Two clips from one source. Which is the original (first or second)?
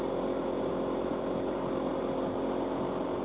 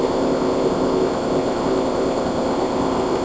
first